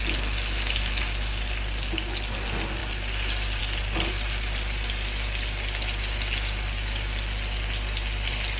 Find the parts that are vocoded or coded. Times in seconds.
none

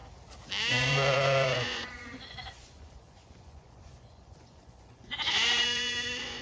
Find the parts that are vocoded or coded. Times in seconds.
0.7-6.4 (vocoder, Vocos)

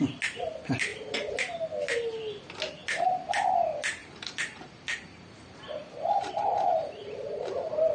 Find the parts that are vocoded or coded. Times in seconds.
4.0-7.9 (vocoder, BigVGAN v2)

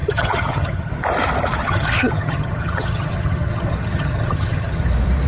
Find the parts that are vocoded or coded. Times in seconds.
0.0-0.9 (vocoder, HiFi-GAN); 1.6-4.8